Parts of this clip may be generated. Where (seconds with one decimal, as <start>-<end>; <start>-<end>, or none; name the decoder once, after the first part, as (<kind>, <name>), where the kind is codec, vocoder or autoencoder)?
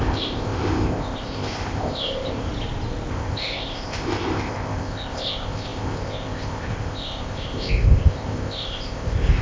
0.0-2.5 (codec, ZipCodec); 3.1-9.4